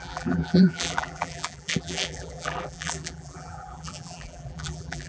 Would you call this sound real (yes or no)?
no